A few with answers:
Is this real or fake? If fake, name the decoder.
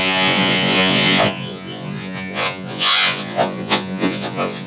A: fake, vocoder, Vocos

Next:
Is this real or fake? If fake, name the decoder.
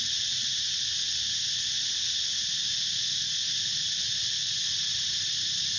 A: real